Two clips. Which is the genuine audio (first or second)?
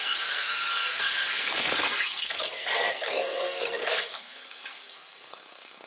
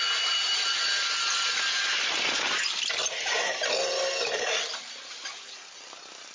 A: second